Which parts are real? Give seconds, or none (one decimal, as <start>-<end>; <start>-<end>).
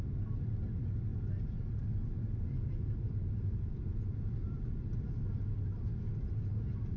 0.0-1.1; 4.7-5.7; 6.5-7.0